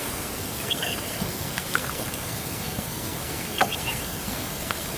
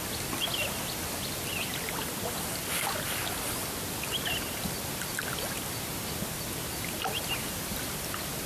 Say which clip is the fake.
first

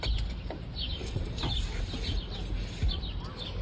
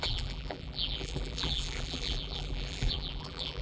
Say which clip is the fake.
second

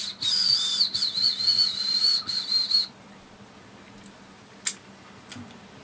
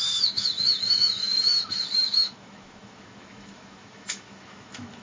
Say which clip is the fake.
second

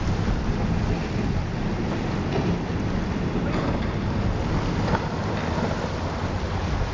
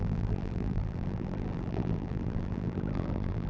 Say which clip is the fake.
second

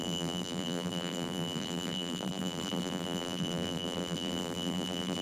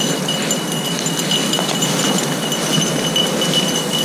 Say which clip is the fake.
first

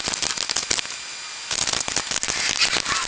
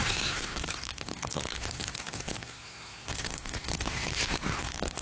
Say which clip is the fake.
second